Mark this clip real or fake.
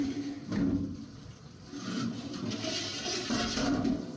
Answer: fake